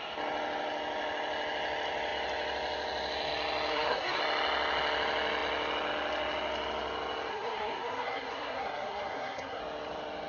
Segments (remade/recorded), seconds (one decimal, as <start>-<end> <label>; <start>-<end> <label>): 0.0-3.7 recorded; 3.7-4.2 remade; 4.2-7.3 recorded; 7.3-9.6 remade; 9.6-10.3 recorded